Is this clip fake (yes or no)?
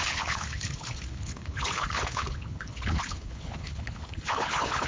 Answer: yes